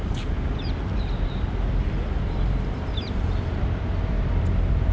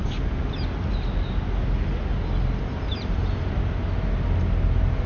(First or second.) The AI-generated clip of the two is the first